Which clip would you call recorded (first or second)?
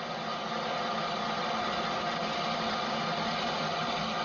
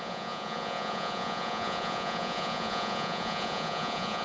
first